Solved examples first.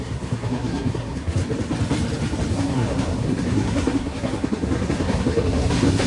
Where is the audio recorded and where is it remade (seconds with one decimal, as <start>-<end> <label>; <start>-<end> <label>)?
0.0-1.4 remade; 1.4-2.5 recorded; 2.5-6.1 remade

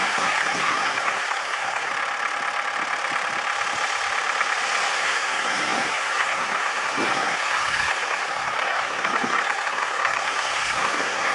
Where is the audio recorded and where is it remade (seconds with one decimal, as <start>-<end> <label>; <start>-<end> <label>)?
0.0-1.9 remade; 1.9-4.9 recorded; 4.9-11.3 remade

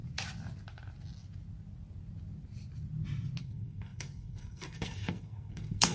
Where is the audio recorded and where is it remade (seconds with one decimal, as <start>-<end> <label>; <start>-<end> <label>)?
0.0-3.4 recorded; 3.4-5.9 remade

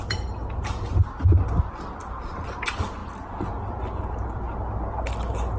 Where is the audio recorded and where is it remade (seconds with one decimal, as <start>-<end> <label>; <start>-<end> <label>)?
0.0-5.6 recorded

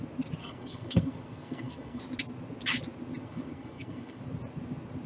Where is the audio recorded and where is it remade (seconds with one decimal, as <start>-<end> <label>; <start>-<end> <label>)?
0.0-0.4 recorded; 0.4-2.0 remade; 2.0-3.2 recorded; 3.2-4.2 remade; 4.2-5.1 recorded